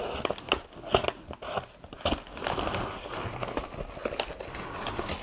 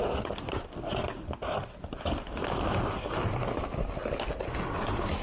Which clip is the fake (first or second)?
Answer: second